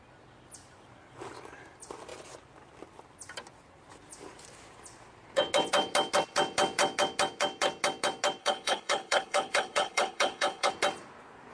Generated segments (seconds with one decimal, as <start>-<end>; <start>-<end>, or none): 8.4-10.7